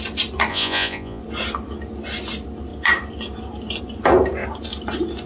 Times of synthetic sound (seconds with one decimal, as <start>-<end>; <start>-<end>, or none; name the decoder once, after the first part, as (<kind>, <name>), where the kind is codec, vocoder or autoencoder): 0.5-1.2 (vocoder, Vocos)